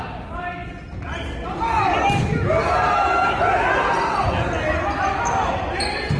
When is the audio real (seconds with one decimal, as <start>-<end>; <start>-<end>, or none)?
0.0-6.2